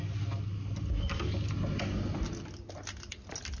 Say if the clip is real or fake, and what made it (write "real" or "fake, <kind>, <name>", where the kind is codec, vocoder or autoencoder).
real